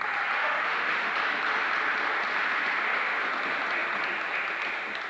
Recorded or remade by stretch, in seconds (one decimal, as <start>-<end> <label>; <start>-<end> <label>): 0.0-0.4 recorded; 0.4-1.1 remade; 1.1-5.1 recorded